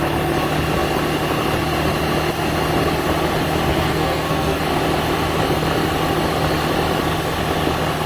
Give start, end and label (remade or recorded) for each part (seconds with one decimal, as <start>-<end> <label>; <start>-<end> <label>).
0.0-3.7 recorded; 3.7-4.6 remade; 4.6-8.1 recorded